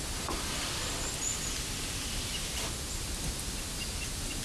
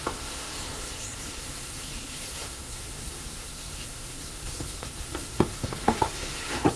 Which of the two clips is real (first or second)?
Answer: first